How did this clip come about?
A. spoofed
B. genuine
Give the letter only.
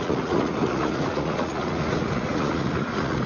A